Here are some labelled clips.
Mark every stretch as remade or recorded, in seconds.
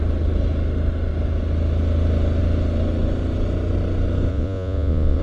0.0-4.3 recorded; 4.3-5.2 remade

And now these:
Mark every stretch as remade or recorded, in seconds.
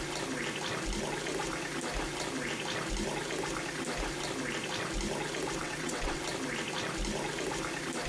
0.0-5.6 recorded; 5.6-6.2 remade; 6.2-8.1 recorded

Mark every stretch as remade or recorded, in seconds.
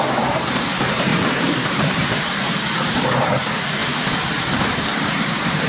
0.0-5.7 remade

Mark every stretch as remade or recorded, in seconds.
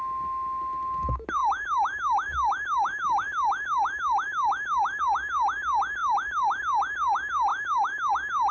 0.0-1.4 recorded; 1.4-5.0 remade; 5.0-6.0 recorded; 6.0-6.6 remade; 6.6-7.5 recorded; 7.5-8.1 remade; 8.1-8.5 recorded